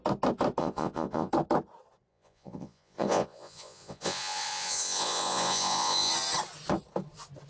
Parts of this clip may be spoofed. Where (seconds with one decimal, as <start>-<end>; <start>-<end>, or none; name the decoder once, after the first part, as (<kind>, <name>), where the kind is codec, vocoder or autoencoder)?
0.6-1.3 (vocoder, Vocos); 2.1-6.1